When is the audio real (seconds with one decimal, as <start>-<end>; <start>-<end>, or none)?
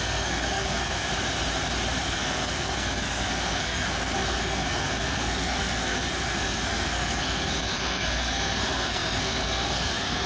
1.1-2.0